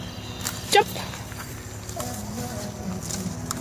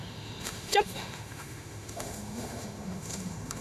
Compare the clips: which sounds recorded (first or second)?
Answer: first